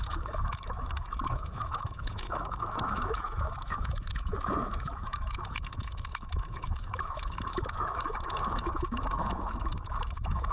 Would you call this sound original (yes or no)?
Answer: no